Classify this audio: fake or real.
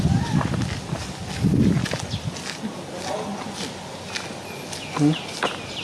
real